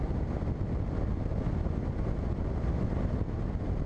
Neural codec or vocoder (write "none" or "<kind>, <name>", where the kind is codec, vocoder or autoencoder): none